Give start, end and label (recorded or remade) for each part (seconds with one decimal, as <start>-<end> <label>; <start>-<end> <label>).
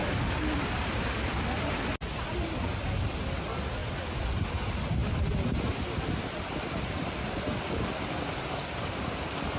0.0-1.7 remade; 1.7-9.6 recorded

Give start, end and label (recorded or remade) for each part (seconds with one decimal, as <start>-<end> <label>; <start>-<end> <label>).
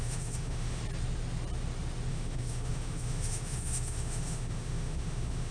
0.0-0.8 remade; 0.8-2.1 recorded; 2.1-5.5 remade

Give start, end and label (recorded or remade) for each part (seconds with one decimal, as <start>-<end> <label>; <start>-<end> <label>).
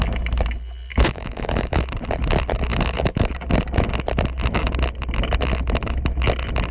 0.0-0.9 recorded; 0.9-1.8 remade; 1.8-2.7 recorded; 2.7-3.3 remade; 3.3-6.7 recorded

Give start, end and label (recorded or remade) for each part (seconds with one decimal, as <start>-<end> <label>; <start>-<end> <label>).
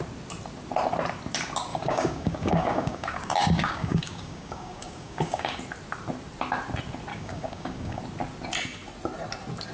0.0-1.7 recorded; 1.7-5.6 remade; 5.6-7.1 recorded; 7.1-8.0 remade; 8.0-9.7 recorded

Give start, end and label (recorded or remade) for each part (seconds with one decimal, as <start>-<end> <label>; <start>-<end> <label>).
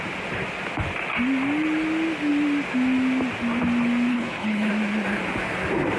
0.0-4.1 recorded; 4.1-4.7 remade; 4.7-6.0 recorded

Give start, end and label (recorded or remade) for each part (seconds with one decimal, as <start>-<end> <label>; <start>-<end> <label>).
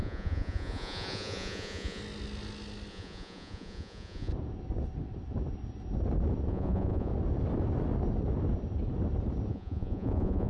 0.0-2.0 remade; 2.0-2.9 recorded; 2.9-4.3 remade; 4.3-6.5 recorded; 6.5-7.1 remade; 7.1-9.5 recorded; 9.5-10.5 remade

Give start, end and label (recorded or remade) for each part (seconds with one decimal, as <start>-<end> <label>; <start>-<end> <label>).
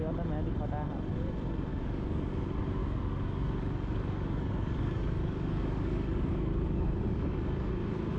0.0-1.7 recorded; 1.7-2.3 remade; 2.3-2.8 recorded; 2.8-7.7 remade; 7.7-8.2 recorded